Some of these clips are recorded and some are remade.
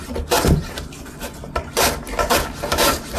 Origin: recorded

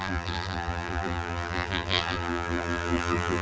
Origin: remade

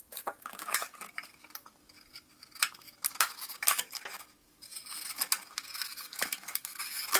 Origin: remade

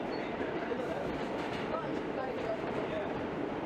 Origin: remade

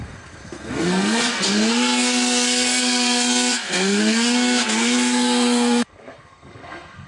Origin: remade